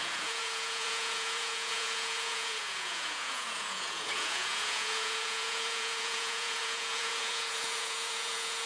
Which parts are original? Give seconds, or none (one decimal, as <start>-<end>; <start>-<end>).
none